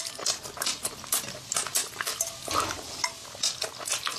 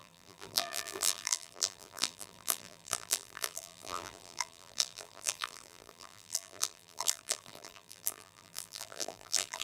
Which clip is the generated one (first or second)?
second